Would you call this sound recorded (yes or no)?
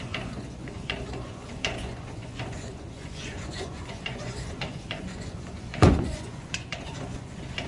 no